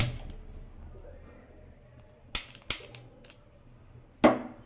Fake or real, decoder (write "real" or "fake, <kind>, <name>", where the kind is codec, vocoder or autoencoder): real